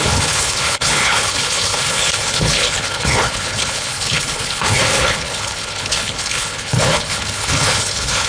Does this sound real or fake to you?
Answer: fake